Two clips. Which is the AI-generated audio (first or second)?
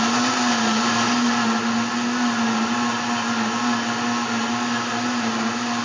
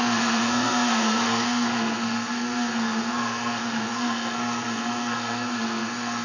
second